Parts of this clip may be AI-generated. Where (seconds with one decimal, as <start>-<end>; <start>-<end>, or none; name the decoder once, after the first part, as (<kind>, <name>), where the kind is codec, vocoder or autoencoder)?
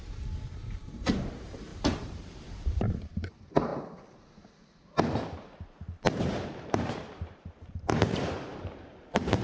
0.0-3.7 (vocoder, BigVGAN v2); 6.5-9.4